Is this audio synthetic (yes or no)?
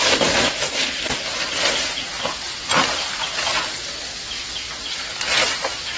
no